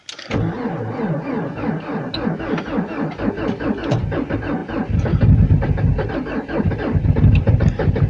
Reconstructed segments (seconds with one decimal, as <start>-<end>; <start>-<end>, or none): none